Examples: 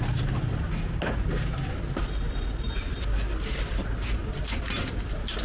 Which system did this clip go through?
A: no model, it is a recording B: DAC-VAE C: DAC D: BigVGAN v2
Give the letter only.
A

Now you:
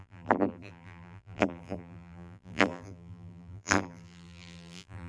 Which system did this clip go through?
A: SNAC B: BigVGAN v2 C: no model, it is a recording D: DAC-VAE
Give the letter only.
B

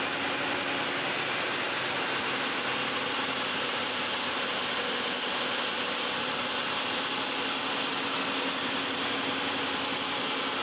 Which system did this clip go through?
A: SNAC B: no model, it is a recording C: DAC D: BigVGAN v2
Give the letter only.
B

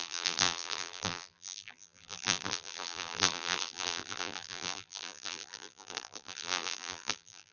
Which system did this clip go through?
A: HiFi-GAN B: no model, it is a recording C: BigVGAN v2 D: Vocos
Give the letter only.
C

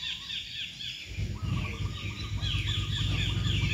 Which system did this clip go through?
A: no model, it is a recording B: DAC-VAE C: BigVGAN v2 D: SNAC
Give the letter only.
A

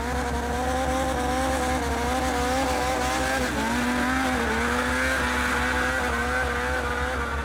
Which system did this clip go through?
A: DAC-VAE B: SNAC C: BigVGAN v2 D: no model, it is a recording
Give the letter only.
D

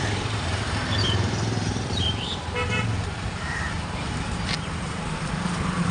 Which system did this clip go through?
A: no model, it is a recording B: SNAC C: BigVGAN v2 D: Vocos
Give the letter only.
C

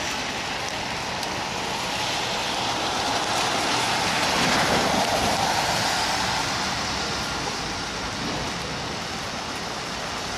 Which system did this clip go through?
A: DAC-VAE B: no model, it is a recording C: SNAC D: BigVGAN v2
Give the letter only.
B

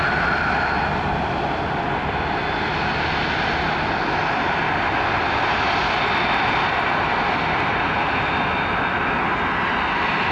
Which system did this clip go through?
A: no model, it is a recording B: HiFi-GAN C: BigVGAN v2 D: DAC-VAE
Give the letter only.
A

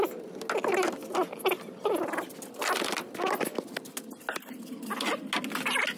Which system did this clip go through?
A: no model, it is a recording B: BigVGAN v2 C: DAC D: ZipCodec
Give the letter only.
A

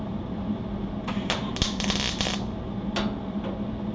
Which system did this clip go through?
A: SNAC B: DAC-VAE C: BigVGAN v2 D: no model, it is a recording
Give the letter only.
D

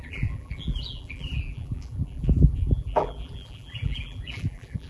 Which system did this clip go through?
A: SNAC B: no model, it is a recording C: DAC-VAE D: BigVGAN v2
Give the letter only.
D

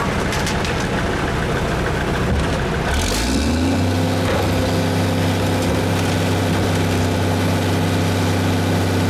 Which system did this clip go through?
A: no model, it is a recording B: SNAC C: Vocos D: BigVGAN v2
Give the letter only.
A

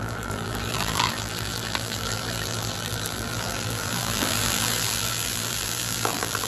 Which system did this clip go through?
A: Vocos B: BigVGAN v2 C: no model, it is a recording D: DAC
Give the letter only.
B